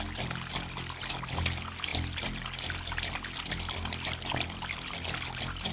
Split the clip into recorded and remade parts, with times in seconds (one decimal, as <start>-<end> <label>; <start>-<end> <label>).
0.0-5.7 recorded